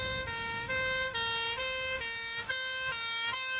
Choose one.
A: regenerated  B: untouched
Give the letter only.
B